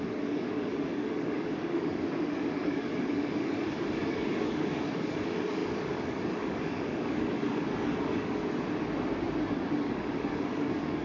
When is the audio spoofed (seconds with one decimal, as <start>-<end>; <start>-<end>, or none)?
0.0-8.4; 9.4-11.0

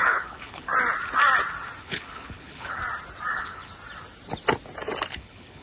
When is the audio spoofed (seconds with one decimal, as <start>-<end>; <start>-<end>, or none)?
0.0-0.7; 1.8-2.8; 3.3-3.7; 5.1-5.6

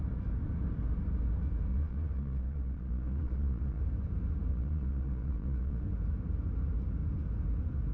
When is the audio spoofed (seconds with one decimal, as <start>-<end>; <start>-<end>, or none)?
1.7-3.8; 4.5-5.8

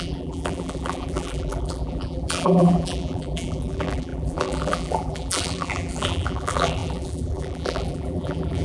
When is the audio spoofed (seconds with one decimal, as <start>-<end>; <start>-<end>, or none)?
0.0-8.6